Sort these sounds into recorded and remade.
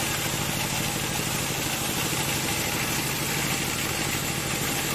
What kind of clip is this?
recorded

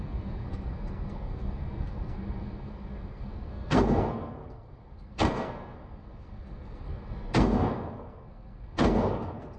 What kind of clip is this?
remade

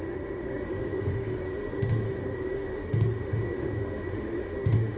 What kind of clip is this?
remade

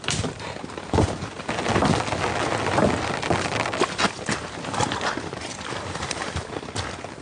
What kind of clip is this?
remade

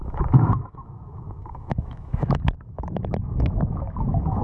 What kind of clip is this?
remade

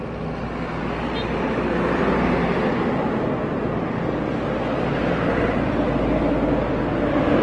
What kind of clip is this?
recorded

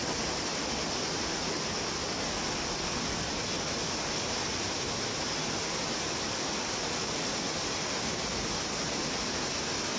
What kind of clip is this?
recorded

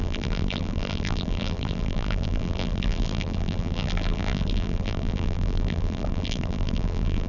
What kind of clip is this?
remade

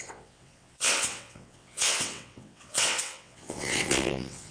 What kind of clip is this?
remade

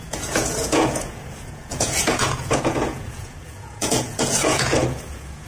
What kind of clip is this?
remade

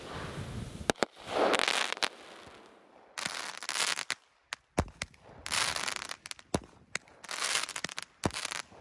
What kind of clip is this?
recorded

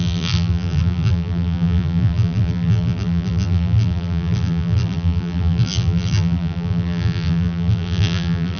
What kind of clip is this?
remade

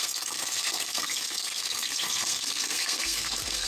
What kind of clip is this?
remade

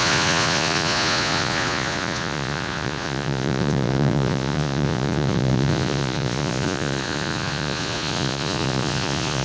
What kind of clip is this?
remade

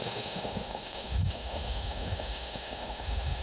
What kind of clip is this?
remade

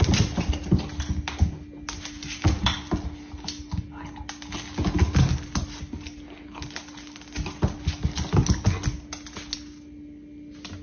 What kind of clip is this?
recorded